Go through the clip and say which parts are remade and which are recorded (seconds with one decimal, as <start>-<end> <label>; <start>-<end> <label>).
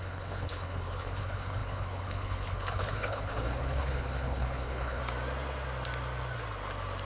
0.0-5.0 remade; 5.0-7.1 recorded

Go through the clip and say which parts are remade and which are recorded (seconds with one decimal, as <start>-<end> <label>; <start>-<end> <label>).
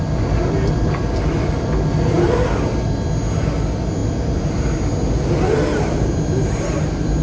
0.0-7.2 recorded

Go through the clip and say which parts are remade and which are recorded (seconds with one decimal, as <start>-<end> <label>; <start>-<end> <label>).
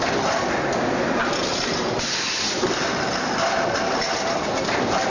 0.0-5.1 recorded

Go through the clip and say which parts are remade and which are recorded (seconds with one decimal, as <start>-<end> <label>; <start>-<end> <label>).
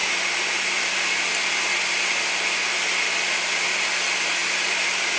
0.0-4.4 recorded; 4.4-5.2 remade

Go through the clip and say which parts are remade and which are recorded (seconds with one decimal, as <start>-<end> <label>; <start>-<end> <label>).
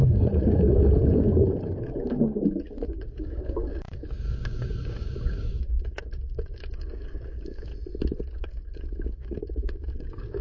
0.0-7.7 remade; 7.7-8.4 recorded; 8.4-10.4 remade